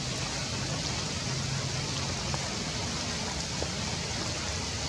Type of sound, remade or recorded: recorded